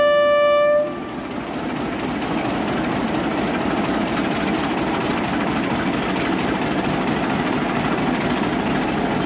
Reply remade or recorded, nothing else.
recorded